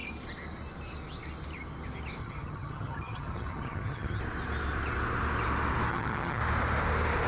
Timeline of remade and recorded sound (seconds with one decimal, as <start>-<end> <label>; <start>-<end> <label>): 0.0-2.2 recorded; 2.2-4.2 remade; 4.2-5.9 recorded; 5.9-6.4 remade; 6.4-7.3 recorded